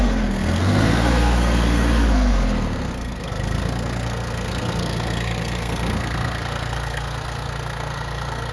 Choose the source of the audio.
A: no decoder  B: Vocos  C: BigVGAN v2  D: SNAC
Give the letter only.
D